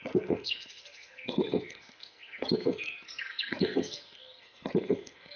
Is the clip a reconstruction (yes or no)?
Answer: yes